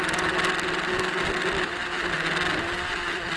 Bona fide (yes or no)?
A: yes